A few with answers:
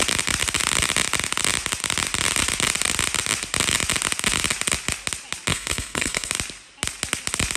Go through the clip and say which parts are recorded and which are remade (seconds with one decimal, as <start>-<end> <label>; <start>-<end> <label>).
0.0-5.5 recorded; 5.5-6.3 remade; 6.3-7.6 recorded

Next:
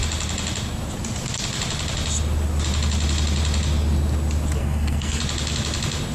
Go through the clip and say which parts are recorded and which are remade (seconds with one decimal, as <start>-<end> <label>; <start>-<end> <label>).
0.0-4.6 recorded; 4.6-5.2 remade; 5.2-6.1 recorded

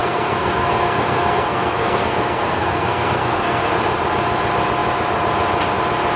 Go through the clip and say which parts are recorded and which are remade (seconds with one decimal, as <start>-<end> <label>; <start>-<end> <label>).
0.0-3.7 remade; 3.7-6.2 recorded